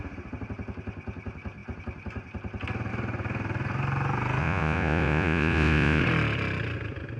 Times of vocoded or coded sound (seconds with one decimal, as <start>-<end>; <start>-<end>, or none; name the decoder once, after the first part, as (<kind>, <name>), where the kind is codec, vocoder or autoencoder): 4.4-6.0 (vocoder, Vocos)